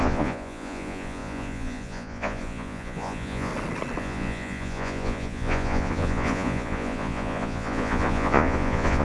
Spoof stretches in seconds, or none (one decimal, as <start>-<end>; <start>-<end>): 0.0-3.5; 4.0-9.0